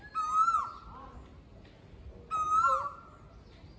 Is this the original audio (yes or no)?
yes